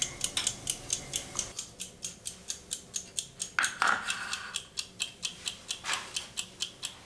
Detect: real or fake real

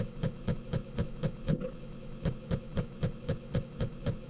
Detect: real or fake fake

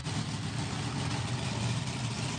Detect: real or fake real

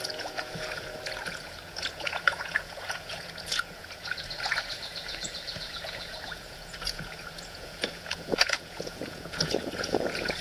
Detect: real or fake fake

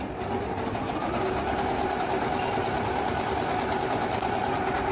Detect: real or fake real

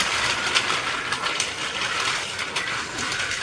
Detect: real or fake real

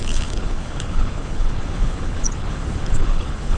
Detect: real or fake fake